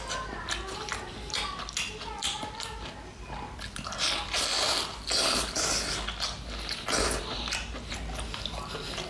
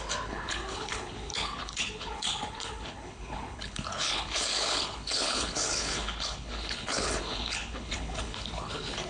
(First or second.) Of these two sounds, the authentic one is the first